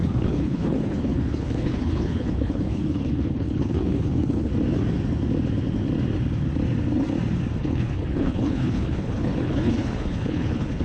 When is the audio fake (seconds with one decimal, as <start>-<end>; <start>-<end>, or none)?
0.0-4.5; 7.6-10.8